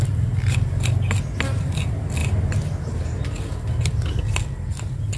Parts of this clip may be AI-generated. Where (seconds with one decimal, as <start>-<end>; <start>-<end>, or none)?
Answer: none